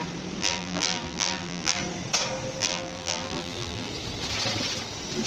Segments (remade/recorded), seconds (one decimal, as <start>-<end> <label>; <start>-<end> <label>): 0.0-0.4 recorded; 0.4-1.8 remade; 1.8-2.6 recorded; 2.6-3.9 remade; 3.9-5.3 recorded